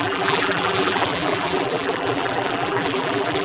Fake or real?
fake